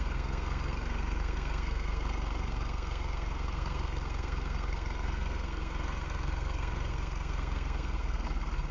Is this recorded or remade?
remade